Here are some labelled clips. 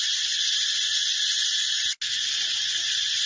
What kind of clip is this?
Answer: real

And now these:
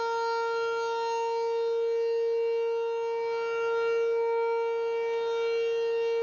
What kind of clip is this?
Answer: real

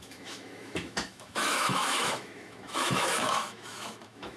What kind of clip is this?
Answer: fake